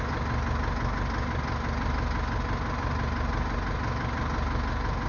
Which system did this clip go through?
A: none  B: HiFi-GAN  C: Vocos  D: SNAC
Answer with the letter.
A